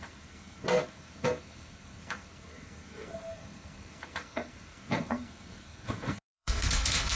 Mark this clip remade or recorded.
remade